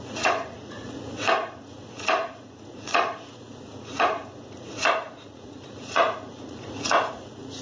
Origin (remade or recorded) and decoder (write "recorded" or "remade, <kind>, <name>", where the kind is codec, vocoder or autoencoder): remade, vocoder, Vocos